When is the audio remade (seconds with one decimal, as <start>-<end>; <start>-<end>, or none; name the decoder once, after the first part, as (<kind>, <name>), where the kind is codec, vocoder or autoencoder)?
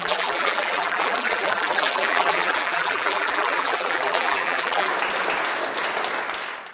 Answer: 0.0-4.9 (vocoder, BigVGAN v2)